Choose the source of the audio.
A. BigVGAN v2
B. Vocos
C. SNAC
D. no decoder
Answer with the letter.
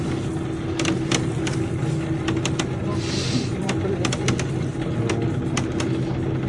D